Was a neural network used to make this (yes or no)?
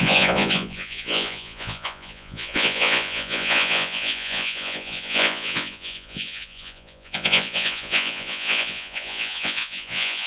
yes